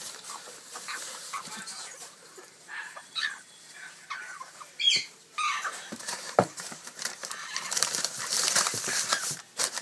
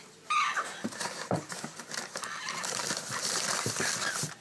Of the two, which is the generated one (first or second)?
first